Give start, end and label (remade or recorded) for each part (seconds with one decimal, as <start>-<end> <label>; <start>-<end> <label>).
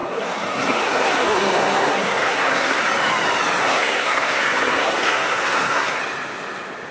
0.0-2.8 remade; 2.8-3.6 recorded; 3.6-6.0 remade; 6.0-6.9 recorded